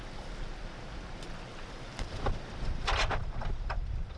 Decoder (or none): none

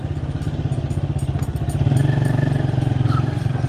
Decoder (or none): none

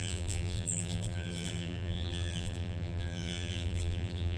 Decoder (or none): vocoder, BigVGAN v2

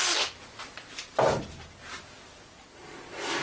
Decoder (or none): none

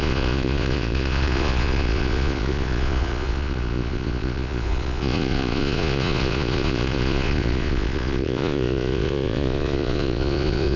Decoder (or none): vocoder, Vocos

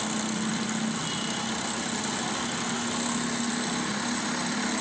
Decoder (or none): none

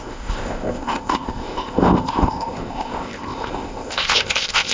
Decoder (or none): codec, ZipCodec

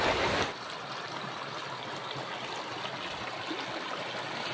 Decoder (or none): none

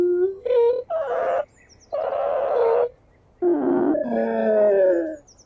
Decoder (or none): none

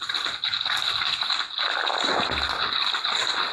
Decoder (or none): none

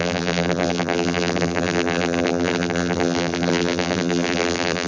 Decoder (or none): vocoder, BigVGAN v2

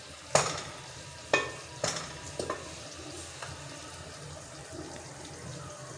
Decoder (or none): none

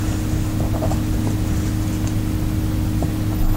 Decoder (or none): none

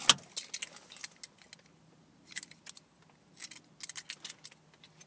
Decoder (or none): none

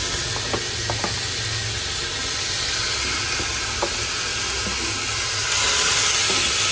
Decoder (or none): none